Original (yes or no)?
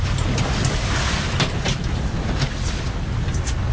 yes